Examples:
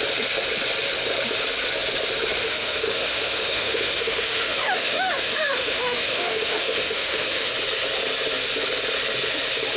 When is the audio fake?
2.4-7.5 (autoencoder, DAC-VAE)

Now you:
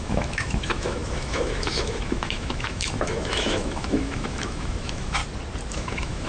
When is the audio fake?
0.0-5.2 (autoencoder, DAC-VAE); 5.7-6.3

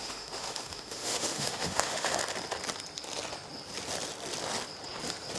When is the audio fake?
0.0-2.2 (autoencoder, DAC-VAE)

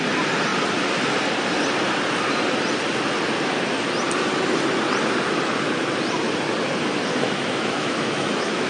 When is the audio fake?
7.0-8.7 (autoencoder, DAC-VAE)

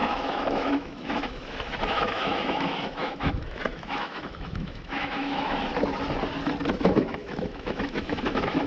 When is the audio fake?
0.0-5.7 (autoencoder, DAC-VAE); 6.7-8.7

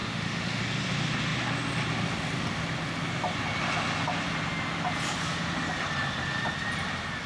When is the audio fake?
0.0-0.6 (autoencoder, DAC-VAE)

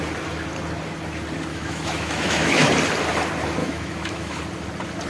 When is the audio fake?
1.5-2.7 (autoencoder, DAC-VAE); 3.6-4.4

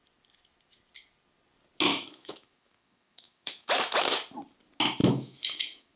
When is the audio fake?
1.9-3.7 (autoencoder, DAC-VAE); 5.0-6.0